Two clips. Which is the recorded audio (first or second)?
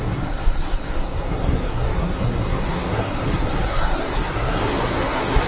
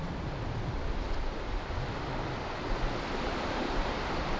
second